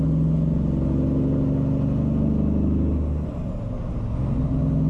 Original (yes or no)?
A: yes